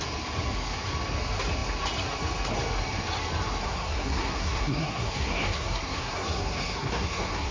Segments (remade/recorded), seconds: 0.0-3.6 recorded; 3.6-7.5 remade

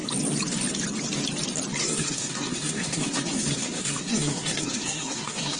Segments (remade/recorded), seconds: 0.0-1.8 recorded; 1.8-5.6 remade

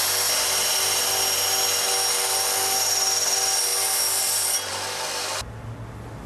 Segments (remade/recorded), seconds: 0.0-6.3 recorded

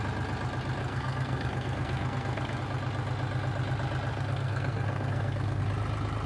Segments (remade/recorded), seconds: 0.0-0.8 recorded; 0.8-2.6 remade; 2.6-4.1 recorded; 4.1-5.6 remade; 5.6-6.3 recorded

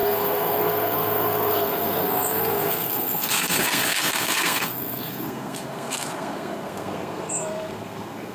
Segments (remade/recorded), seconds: 0.0-8.3 remade

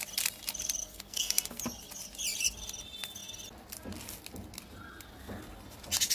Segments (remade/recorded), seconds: 0.0-0.8 recorded; 0.8-1.6 remade; 1.6-6.1 recorded